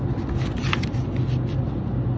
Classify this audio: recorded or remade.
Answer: recorded